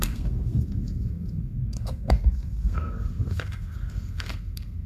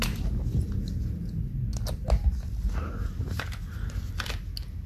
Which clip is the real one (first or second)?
second